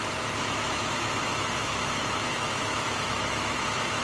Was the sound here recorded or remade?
remade